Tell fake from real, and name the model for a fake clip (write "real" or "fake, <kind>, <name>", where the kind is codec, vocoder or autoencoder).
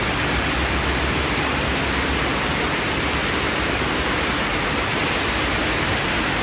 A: real